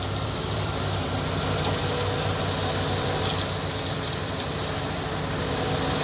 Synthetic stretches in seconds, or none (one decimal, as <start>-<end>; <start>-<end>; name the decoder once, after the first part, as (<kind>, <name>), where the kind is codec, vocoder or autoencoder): 0.0-1.1 (vocoder, BigVGAN v2); 3.8-4.6